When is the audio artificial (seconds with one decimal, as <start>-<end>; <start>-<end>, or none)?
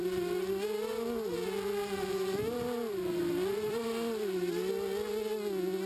3.2-4.7